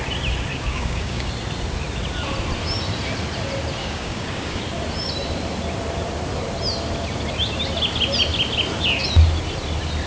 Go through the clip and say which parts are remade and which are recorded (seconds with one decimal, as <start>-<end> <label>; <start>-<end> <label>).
0.0-0.5 recorded; 0.5-1.3 remade; 1.3-3.8 recorded; 3.8-4.6 remade; 4.6-10.1 recorded